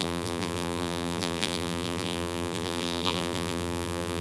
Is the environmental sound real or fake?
fake